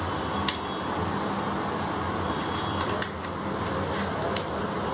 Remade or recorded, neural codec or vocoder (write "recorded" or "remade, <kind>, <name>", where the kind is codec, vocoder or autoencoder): recorded